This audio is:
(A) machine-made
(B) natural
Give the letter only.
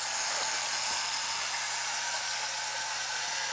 B